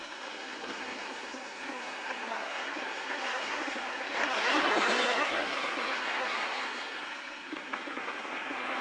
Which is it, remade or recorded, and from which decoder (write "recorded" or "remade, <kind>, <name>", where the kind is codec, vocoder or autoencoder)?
remade, codec, SNAC